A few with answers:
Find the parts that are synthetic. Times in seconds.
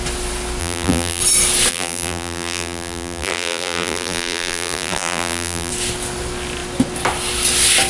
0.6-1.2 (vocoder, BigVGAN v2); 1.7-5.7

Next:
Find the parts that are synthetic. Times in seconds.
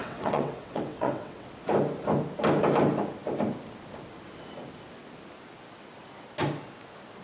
0.0-1.5 (vocoder, WaveNeXt)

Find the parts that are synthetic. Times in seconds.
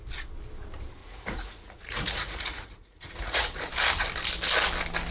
1.0-3.7 (vocoder, Vocos)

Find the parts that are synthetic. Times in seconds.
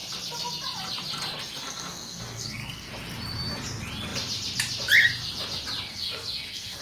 1.6-2.9 (codec, SNAC); 5.9-6.8